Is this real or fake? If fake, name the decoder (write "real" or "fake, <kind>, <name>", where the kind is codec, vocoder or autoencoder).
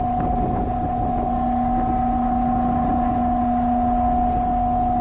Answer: real